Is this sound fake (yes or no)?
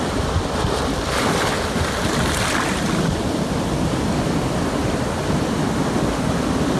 no